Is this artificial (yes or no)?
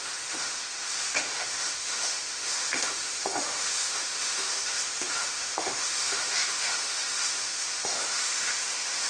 yes